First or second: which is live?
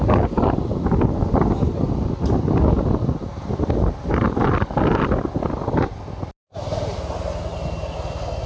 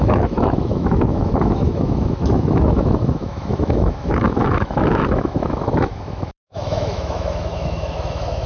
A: first